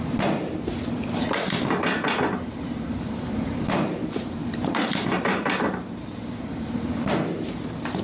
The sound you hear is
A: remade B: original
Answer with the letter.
A